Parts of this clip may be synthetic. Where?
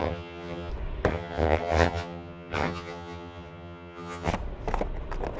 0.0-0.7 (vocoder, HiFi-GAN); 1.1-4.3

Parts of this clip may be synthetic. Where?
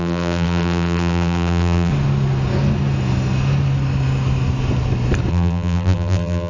0.0-1.9 (vocoder, BigVGAN v2); 5.3-6.5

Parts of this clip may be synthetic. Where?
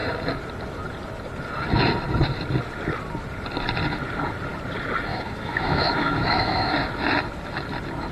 5.1-6.7 (autoencoder, DAC-VAE)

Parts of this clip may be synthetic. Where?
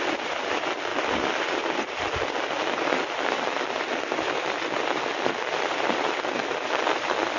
none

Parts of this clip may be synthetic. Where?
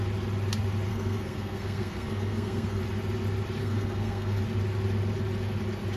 0.9-2.8 (codec, SNAC); 3.6-4.4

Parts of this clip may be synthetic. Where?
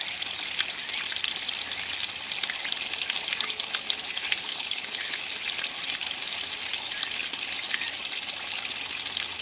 4.5-5.2 (codec, HILCodec)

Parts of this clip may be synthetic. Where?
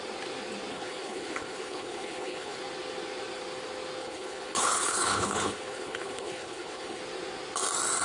0.7-2.6 (codec, HILCodec); 4.0-7.0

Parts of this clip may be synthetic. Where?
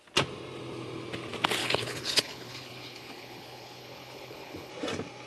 1.6-4.7 (codec, HILCodec)